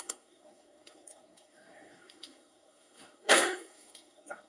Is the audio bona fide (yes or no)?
no